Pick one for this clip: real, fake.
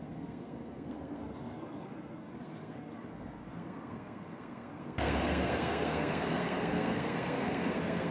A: fake